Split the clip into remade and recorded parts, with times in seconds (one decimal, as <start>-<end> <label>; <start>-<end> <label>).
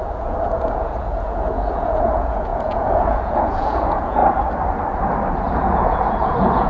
0.0-4.2 remade; 4.2-5.6 recorded; 5.6-6.7 remade